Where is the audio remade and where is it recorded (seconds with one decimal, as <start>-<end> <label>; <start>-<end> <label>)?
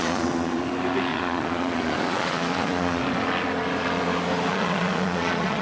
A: 0.0-0.6 remade; 0.6-1.1 recorded; 1.1-3.0 remade; 3.0-4.5 recorded; 4.5-5.6 remade